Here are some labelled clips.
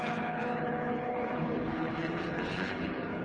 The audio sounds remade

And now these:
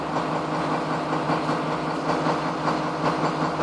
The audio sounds recorded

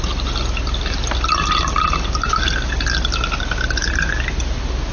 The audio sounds recorded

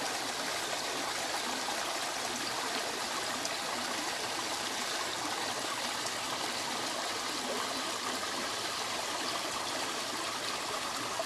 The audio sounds recorded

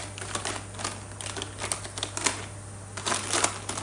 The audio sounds recorded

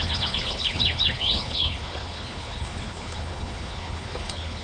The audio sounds remade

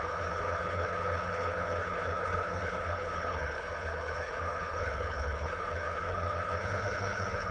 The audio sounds remade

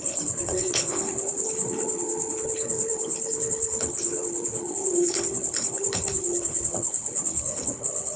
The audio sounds remade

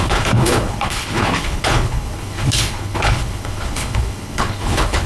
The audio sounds remade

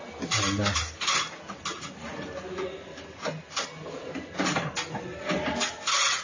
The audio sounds recorded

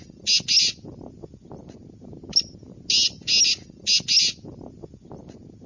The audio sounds recorded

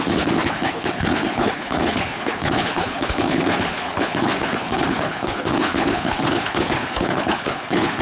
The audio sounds remade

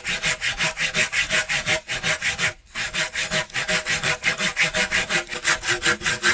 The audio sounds recorded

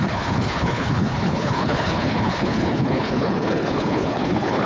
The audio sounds remade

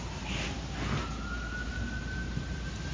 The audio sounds recorded